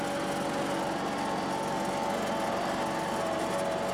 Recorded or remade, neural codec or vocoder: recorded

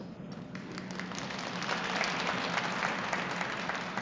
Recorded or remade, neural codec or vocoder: recorded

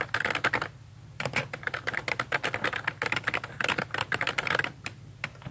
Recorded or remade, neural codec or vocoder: recorded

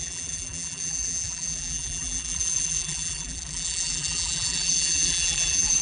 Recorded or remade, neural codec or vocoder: remade, vocoder, BigVGAN v2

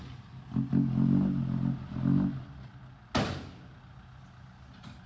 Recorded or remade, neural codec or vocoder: recorded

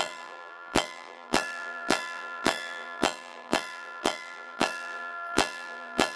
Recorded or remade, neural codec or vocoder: remade, vocoder, BigVGAN v2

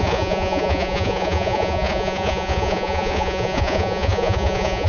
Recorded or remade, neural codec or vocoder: remade, vocoder, Vocos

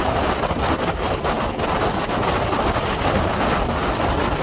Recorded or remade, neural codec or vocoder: recorded